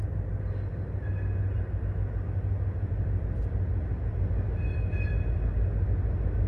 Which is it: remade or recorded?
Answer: recorded